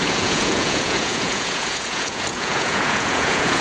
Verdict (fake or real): fake